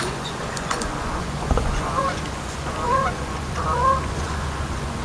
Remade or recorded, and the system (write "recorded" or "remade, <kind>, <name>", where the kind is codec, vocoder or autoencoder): remade, vocoder, Vocos